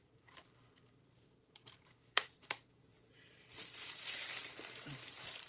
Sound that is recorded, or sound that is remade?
remade